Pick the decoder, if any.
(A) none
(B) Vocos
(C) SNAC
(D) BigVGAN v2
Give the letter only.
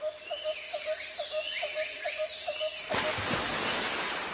A